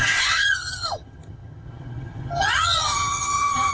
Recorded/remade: remade